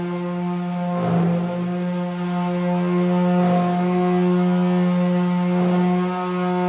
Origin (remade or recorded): recorded